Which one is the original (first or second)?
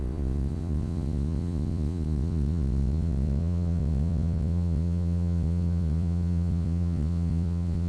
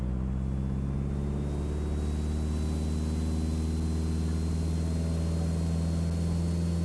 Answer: second